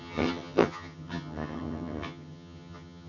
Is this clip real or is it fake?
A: fake